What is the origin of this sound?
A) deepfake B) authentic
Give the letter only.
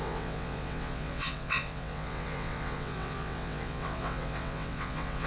A